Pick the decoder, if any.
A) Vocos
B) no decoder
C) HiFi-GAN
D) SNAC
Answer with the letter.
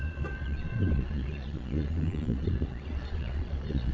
A